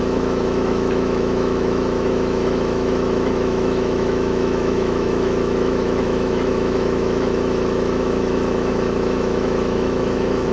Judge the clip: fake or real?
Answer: fake